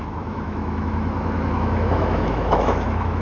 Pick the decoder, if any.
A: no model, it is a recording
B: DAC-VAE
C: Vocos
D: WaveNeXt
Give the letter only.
B